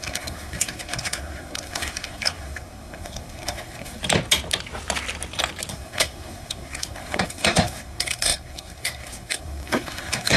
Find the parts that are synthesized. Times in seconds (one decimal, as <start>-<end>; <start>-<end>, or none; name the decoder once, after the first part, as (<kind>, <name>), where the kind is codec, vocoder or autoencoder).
0.0-4.0 (codec, SNAC); 5.7-10.4